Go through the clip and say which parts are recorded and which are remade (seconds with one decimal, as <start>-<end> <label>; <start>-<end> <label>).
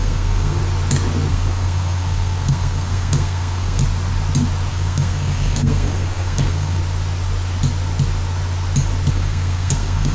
0.0-0.6 remade; 0.6-1.3 recorded; 1.3-3.8 remade; 3.8-4.7 recorded; 4.7-6.8 remade; 6.8-9.1 recorded; 9.1-10.1 remade